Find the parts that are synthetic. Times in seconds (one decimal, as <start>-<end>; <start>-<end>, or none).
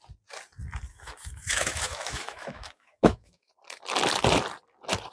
0.9-3.5